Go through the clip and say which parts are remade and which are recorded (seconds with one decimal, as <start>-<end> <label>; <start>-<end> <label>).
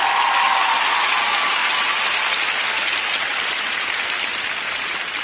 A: 0.0-1.6 recorded; 1.6-4.7 remade; 4.7-5.2 recorded